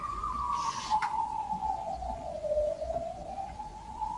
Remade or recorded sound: remade